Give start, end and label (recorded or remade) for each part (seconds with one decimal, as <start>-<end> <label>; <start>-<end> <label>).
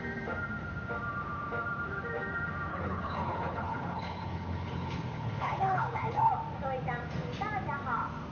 0.0-2.7 recorded; 2.7-6.3 remade; 6.3-8.3 recorded